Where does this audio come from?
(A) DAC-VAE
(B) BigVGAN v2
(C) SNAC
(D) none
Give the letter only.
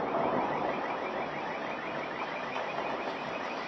B